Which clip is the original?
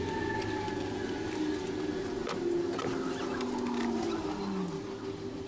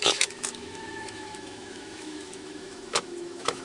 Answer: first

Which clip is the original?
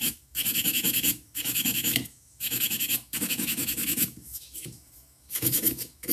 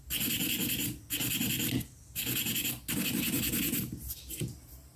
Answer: second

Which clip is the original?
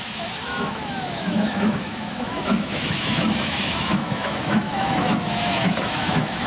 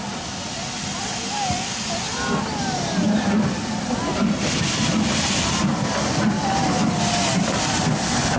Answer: second